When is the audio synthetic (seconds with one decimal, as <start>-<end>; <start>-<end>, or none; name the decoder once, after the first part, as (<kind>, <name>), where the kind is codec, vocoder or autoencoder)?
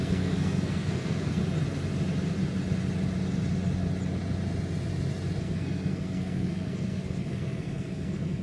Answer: 0.0-1.4 (codec, SNAC); 5.4-8.4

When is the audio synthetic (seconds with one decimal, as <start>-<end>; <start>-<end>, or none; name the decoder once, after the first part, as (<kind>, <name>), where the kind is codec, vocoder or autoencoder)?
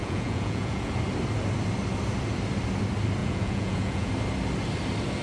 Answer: 0.0-0.9 (vocoder, Vocos); 3.2-4.1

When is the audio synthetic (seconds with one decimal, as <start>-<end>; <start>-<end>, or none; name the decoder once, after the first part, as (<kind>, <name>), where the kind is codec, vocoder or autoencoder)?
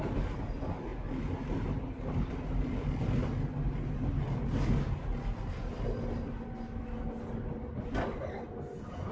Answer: none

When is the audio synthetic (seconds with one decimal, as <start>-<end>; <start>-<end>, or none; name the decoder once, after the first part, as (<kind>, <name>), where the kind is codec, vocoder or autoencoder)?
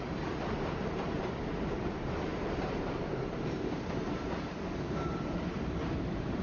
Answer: 0.0-6.4 (vocoder, BigVGAN v2)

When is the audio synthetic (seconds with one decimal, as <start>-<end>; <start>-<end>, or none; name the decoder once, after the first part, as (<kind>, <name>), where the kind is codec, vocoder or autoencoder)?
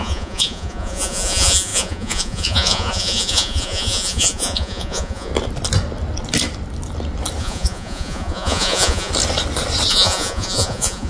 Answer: 0.0-5.3 (vocoder, Vocos); 7.4-9.1; 9.9-11.1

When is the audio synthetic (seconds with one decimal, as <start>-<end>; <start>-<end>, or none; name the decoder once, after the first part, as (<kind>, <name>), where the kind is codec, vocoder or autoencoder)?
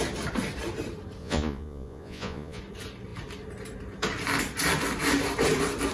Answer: 1.2-2.6 (vocoder, Vocos)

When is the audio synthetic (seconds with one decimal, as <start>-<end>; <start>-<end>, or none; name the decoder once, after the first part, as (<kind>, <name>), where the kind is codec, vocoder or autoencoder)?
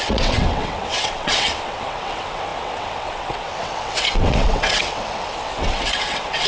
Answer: 0.0-6.5 (vocoder, WaveNeXt)